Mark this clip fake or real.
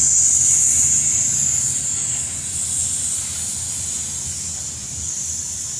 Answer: real